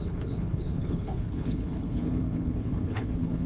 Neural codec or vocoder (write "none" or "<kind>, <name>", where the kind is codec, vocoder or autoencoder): codec, HILCodec